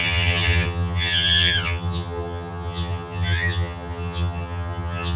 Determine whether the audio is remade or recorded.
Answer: remade